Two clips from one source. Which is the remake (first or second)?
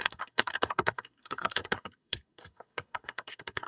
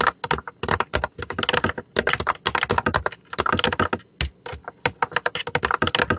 first